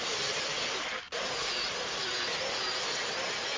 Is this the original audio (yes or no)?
yes